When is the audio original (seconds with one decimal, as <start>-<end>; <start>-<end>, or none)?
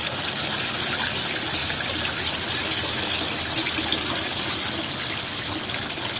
0.0-3.6; 5.2-6.2